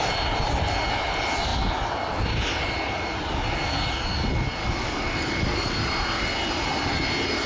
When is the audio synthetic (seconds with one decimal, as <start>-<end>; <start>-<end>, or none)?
4.6-5.7